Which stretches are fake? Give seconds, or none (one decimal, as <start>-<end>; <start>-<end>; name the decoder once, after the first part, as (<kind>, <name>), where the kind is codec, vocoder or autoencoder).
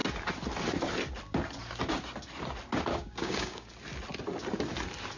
2.9-3.7 (codec, DAC)